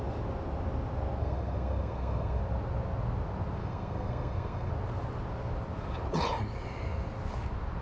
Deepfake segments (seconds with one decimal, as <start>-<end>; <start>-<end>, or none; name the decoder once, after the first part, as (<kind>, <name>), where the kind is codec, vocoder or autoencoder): 1.2-2.4 (codec, SNAC); 3.6-4.7